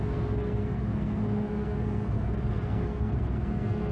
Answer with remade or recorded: remade